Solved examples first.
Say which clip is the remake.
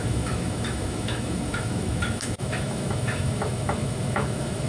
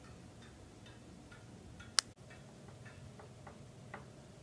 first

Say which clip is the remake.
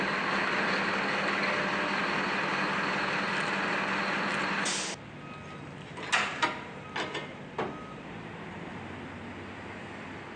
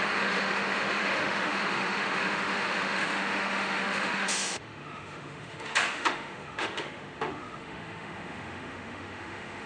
second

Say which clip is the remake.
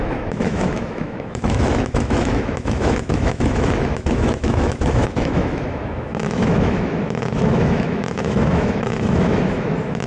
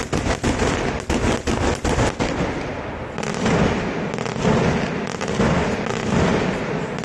first